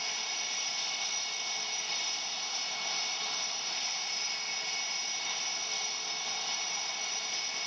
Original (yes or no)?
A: yes